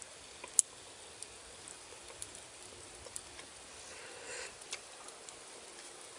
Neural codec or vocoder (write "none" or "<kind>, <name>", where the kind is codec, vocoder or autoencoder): none